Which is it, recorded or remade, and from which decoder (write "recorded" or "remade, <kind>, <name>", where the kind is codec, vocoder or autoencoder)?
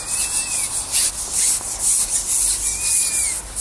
recorded